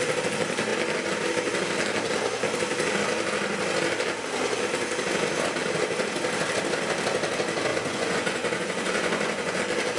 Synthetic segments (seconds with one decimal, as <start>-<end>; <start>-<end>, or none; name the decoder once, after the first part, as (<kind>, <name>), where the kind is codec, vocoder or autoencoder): 7.7-9.6 (vocoder, Vocos)